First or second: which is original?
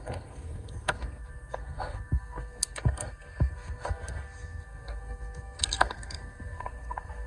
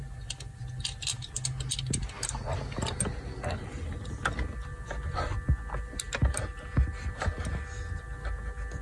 second